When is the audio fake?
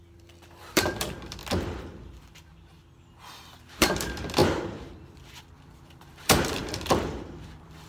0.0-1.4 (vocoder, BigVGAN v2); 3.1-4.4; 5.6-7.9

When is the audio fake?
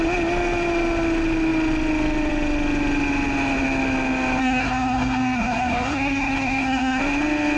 4.4-7.0 (codec, SNAC)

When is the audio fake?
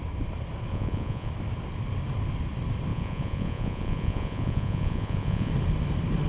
0.7-1.3 (vocoder, Vocos); 2.9-5.5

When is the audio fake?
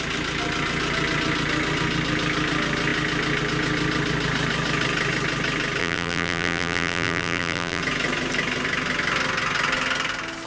5.8-7.8 (vocoder, BigVGAN v2)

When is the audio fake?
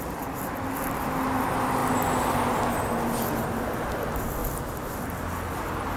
none